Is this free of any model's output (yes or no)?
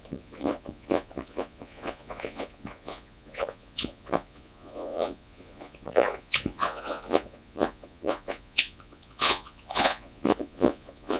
no